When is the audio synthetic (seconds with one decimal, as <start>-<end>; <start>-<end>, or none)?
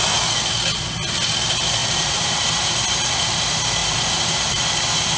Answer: 1.8-2.8; 3.8-4.6